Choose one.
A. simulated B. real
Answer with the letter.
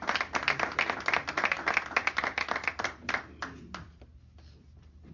B